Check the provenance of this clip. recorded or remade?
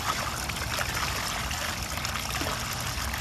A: recorded